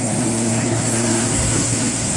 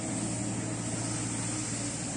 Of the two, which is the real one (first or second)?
second